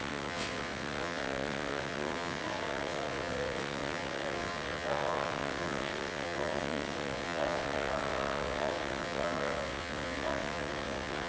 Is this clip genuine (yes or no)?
no